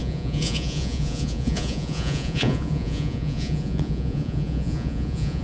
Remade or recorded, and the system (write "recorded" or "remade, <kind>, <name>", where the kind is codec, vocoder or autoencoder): remade, vocoder, Vocos